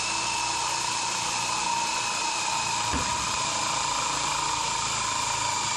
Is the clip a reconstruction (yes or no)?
yes